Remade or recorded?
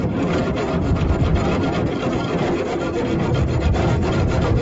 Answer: recorded